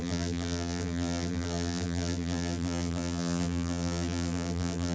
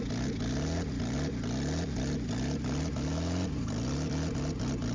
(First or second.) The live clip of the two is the second